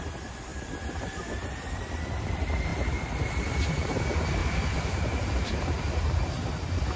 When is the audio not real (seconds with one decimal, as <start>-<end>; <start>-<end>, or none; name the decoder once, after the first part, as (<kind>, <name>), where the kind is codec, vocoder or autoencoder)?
0.5-1.2 (vocoder, BigVGAN v2); 4.4-6.0